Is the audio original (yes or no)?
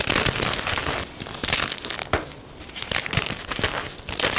yes